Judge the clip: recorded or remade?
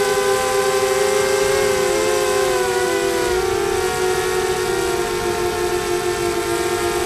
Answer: recorded